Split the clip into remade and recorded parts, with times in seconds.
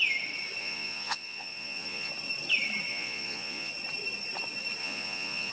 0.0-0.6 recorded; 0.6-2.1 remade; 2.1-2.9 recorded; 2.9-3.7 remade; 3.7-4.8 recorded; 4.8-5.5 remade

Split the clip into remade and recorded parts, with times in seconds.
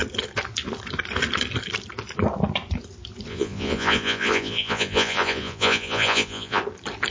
0.0-3.3 recorded; 3.3-6.6 remade; 6.6-7.1 recorded